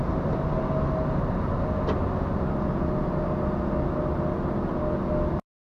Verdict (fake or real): real